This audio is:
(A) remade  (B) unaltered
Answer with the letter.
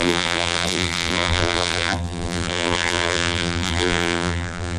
A